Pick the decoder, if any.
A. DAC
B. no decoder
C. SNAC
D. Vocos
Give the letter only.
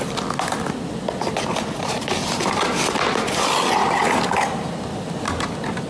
B